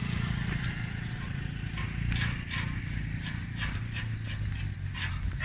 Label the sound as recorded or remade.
recorded